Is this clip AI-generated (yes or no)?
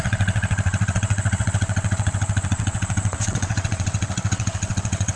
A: yes